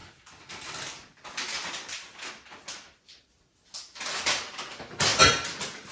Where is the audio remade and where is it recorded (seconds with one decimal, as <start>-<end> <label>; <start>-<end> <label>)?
0.0-5.9 recorded